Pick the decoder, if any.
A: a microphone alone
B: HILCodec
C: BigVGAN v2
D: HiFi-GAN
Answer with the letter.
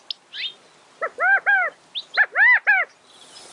A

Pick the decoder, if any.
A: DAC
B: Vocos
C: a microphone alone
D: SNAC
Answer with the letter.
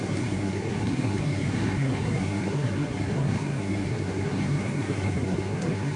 D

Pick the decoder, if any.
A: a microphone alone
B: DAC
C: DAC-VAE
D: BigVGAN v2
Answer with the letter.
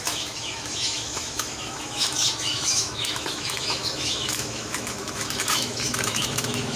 C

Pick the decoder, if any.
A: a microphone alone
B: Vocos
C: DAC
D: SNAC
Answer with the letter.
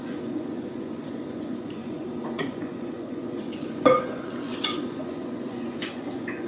B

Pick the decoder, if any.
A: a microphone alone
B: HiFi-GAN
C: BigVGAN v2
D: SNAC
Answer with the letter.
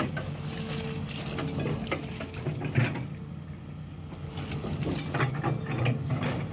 A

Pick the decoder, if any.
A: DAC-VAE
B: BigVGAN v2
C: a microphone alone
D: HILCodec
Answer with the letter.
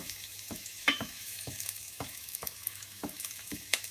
A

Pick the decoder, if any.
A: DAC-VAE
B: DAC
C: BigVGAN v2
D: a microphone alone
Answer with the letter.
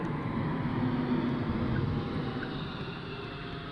D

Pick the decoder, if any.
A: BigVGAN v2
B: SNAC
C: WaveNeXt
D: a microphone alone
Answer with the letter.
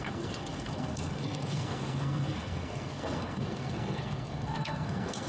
B